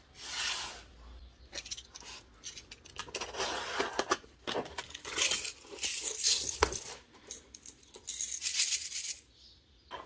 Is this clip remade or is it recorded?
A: recorded